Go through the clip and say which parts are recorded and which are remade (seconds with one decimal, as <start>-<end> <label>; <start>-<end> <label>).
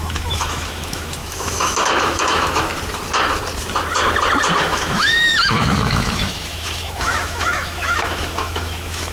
0.0-2.7 remade; 2.7-4.6 recorded; 4.6-9.1 remade